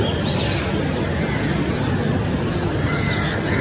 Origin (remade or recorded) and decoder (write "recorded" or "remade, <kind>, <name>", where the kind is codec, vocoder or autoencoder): recorded